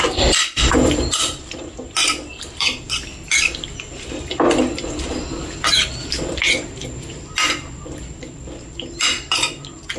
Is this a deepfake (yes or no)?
no